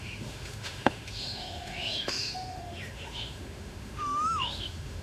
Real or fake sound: fake